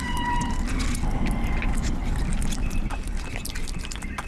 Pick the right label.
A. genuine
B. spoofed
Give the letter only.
A